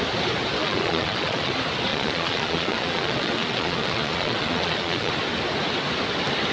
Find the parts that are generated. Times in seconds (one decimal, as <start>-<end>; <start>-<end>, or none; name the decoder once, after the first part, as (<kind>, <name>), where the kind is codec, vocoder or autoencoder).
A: 0.6-1.5 (vocoder, Vocos); 1.9-5.1